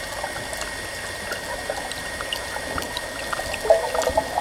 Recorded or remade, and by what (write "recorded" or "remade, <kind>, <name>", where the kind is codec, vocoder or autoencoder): recorded